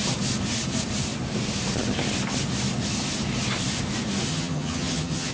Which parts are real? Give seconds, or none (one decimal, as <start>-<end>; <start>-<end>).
0.0-4.3